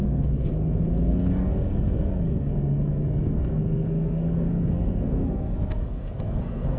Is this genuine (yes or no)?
no